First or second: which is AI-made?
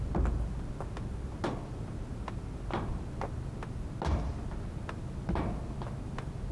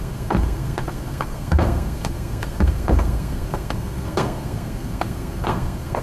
second